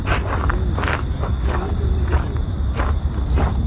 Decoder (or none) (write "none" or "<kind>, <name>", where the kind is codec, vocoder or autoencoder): none